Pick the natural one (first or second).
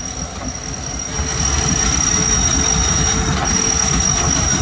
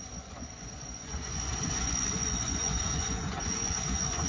first